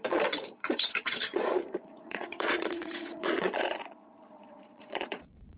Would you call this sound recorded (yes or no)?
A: no